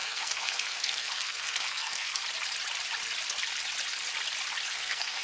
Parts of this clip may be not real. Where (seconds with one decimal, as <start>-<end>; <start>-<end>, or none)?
0.0-2.2; 4.7-5.2